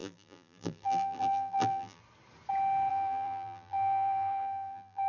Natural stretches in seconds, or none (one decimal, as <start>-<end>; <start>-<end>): 2.0-2.9